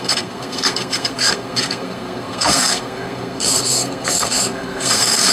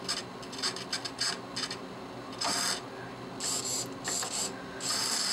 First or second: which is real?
second